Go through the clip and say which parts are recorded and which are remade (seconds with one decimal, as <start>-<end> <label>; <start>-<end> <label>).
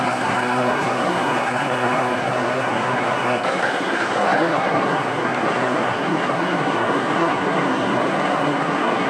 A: 0.0-9.1 remade